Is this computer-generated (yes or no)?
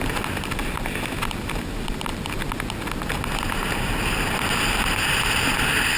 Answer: no